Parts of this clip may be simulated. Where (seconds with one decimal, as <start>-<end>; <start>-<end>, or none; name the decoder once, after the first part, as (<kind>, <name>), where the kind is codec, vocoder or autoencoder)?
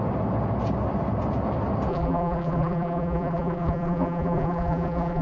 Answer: 1.9-5.2 (vocoder, BigVGAN v2)